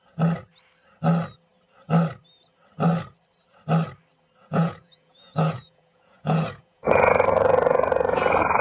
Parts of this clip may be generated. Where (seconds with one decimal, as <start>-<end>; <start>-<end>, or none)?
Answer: 4.4-7.1